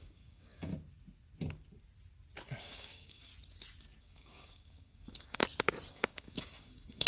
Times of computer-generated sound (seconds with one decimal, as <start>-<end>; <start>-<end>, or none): 0.0-0.7; 2.6-3.3; 4.0-5.4; 5.9-7.1